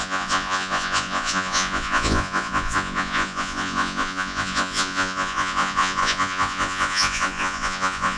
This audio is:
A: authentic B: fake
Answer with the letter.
B